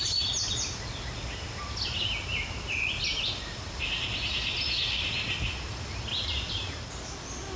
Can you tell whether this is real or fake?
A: real